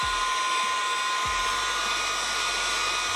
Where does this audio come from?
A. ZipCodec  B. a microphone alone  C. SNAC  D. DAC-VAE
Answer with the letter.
B